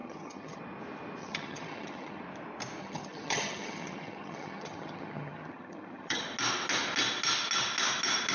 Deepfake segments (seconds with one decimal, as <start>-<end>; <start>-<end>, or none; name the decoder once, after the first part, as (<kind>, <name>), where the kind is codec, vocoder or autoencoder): 0.0-0.6 (vocoder, HiFi-GAN); 1.2-2.2; 2.8-6.2